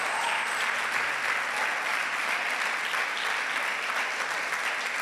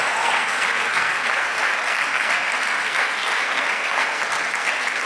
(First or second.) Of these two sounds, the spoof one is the second